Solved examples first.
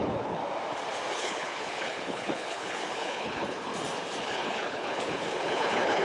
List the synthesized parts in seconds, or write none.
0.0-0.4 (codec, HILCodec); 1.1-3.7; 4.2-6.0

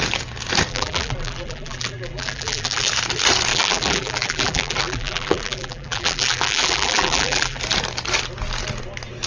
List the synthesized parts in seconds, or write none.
0.7-2.9 (vocoder, BigVGAN v2); 3.5-7.6